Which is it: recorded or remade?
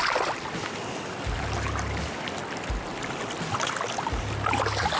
recorded